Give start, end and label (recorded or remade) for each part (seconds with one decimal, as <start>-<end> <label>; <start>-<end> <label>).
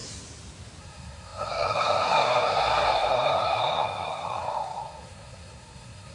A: 0.0-0.8 recorded; 0.8-6.1 remade